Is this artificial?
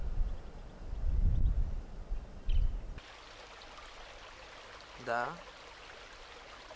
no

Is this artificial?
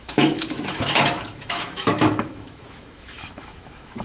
yes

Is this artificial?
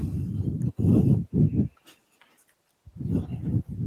no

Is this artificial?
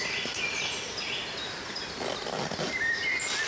no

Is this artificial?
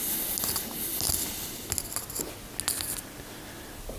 no